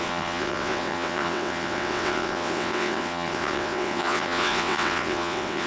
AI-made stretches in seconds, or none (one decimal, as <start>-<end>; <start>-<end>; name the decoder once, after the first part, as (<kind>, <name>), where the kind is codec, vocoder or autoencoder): 0.0-5.7 (vocoder, WaveNeXt)